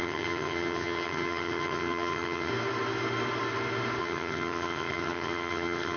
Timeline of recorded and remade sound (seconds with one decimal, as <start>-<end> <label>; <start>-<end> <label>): 0.0-2.5 remade; 2.5-4.0 recorded; 4.0-6.0 remade

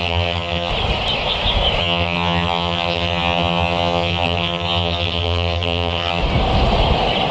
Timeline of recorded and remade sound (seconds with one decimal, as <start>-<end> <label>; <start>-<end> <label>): 0.0-0.7 remade; 0.7-1.8 recorded; 1.8-6.2 remade; 6.2-7.3 recorded

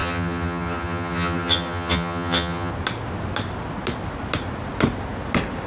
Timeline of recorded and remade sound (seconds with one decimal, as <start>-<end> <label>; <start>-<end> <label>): 0.0-2.7 remade; 2.7-5.7 recorded

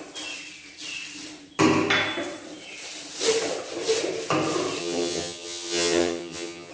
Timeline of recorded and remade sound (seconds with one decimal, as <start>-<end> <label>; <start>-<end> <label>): 0.0-4.8 recorded; 4.8-6.7 remade

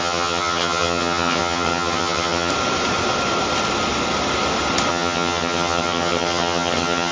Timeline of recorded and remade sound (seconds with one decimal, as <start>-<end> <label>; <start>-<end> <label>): 0.0-2.5 remade; 2.5-4.9 recorded; 4.9-7.1 remade